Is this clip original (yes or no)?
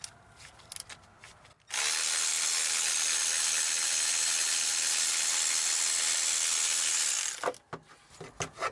yes